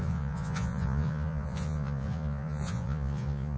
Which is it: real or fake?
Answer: fake